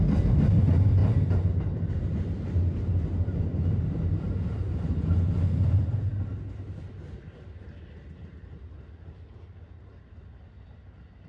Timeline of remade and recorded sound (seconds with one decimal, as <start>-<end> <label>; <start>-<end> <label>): 0.0-11.3 recorded